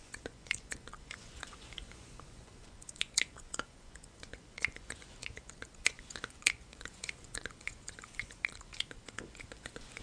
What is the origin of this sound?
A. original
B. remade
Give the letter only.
B